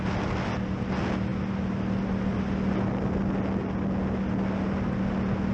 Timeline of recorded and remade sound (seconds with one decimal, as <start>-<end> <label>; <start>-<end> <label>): 0.0-5.5 recorded